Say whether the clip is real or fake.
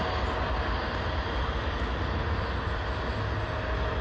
real